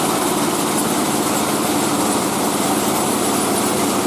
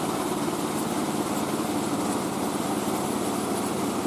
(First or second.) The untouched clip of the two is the first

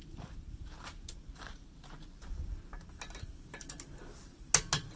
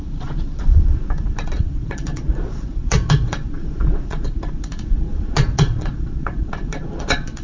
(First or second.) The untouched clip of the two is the first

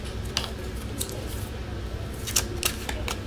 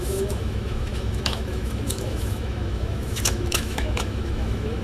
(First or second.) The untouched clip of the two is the first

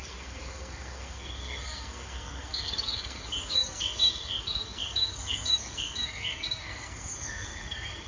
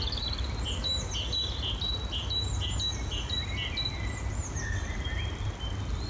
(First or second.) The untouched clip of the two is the second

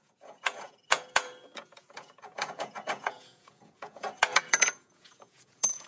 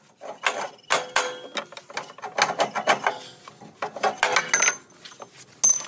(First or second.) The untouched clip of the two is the second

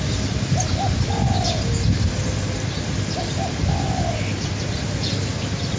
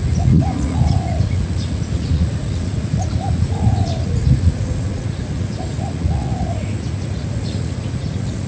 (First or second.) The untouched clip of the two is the first